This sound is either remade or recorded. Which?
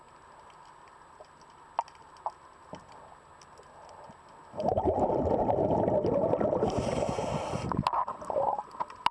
recorded